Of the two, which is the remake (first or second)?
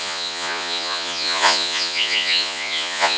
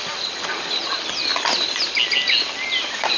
first